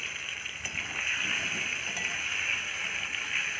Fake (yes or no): no